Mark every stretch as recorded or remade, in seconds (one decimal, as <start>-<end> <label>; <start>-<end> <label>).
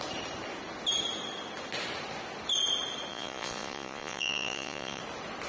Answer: 0.0-3.1 recorded; 3.1-5.0 remade; 5.0-5.5 recorded